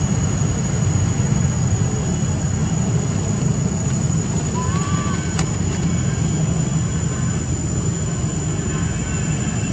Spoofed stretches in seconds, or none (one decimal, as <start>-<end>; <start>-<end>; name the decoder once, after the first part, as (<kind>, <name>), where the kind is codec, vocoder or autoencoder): none